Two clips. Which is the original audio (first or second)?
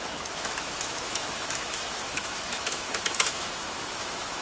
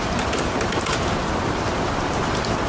second